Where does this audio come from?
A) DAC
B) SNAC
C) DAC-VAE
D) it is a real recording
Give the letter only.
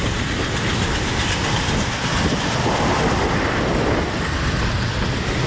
D